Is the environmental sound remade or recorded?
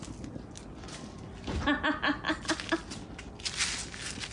recorded